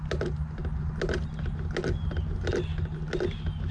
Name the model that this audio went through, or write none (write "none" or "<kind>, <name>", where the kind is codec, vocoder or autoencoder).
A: none